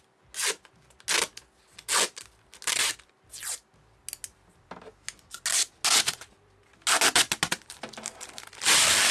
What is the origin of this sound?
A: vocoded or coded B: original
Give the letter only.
B